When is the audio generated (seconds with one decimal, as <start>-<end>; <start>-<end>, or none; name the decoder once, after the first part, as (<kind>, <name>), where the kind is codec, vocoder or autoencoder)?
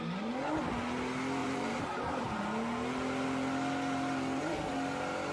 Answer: 1.4-2.4 (vocoder, BigVGAN v2)